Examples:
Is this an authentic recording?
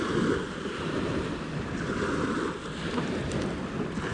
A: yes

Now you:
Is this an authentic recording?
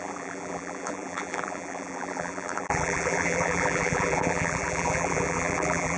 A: no